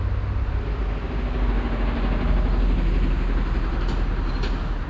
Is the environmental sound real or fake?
real